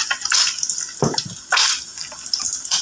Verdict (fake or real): real